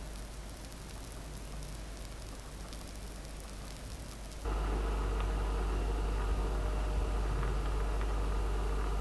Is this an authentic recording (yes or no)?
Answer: yes